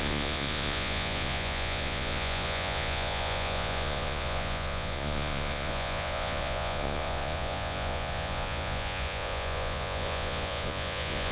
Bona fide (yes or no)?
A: no